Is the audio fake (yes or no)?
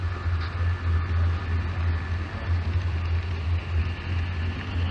no